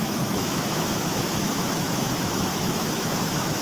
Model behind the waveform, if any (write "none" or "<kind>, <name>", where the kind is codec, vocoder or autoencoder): autoencoder, DAC-VAE